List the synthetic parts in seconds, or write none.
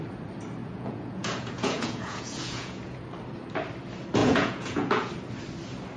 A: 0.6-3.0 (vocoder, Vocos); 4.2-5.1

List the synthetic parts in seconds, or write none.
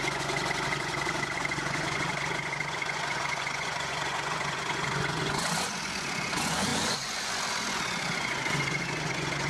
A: 0.0-9.5 (vocoder, Vocos)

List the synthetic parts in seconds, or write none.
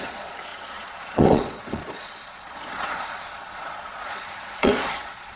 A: 0.0-5.4 (vocoder, Vocos)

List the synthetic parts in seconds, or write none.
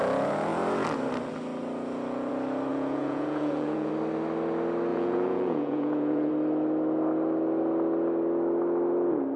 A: 2.7-3.9 (vocoder, Vocos); 4.9-6.3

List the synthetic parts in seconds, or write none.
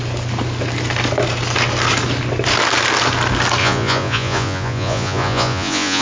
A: 3.6-6.0 (vocoder, Vocos)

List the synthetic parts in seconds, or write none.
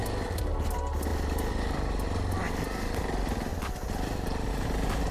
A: none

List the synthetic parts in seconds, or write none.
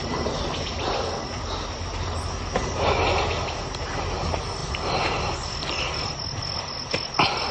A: none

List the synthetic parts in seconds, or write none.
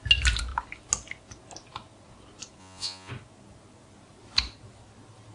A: 2.6-3.1 (vocoder, Vocos)